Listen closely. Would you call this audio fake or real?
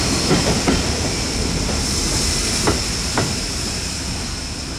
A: real